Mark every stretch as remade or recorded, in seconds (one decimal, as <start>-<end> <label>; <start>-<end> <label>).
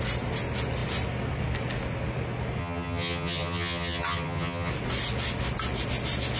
0.0-2.6 recorded; 2.6-4.7 remade; 4.7-6.4 recorded